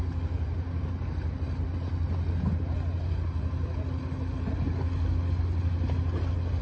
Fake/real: real